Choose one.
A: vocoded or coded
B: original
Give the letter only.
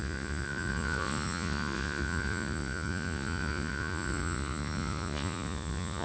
A